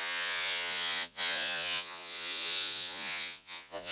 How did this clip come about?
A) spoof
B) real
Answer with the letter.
A